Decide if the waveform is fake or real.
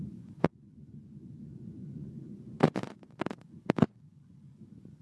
fake